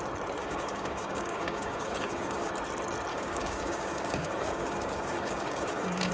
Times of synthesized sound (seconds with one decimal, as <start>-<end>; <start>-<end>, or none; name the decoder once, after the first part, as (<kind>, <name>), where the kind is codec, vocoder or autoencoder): 0.4-2.5 (codec, DAC); 3.1-6.1